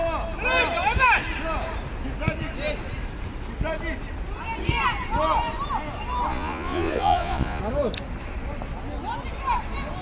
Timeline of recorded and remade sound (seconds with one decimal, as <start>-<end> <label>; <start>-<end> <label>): 0.0-6.3 recorded; 6.3-7.6 remade; 7.6-10.0 recorded